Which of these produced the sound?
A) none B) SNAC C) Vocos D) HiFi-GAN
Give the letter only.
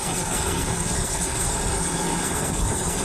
B